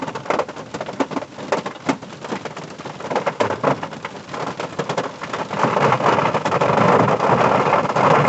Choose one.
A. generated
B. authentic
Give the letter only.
B